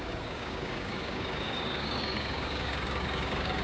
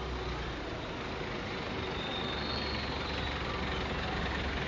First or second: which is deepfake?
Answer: first